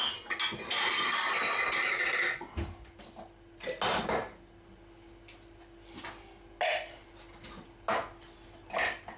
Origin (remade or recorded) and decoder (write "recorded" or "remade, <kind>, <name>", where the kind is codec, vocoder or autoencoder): recorded